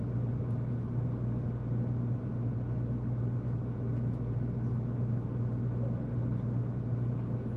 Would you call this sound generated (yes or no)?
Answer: no